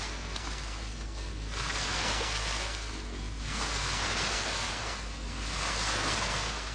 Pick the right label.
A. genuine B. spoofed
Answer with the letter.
B